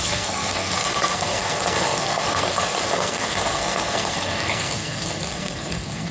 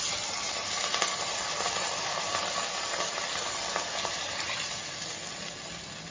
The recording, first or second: second